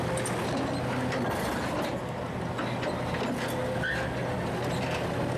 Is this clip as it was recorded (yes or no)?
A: yes